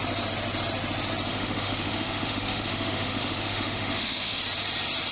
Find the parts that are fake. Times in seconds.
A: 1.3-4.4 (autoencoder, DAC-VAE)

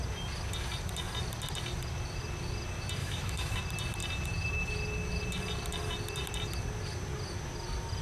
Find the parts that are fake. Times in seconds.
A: 3.0-3.6 (autoencoder, DAC-VAE)

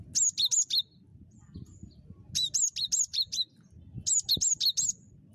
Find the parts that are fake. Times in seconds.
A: none

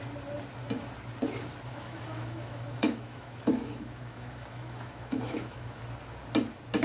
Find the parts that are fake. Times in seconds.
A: 1.7-5.8 (autoencoder, DAC-VAE)

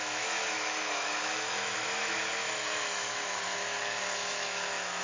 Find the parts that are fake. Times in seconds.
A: 0.0-5.0 (autoencoder, DAC-VAE)

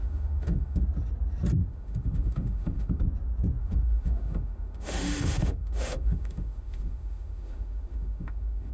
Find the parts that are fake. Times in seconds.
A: 0.0-0.8 (autoencoder, DAC-VAE); 1.6-3.0; 3.6-8.7